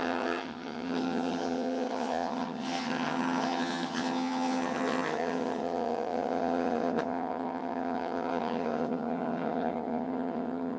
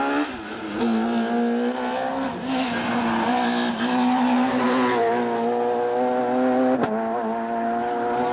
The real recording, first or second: second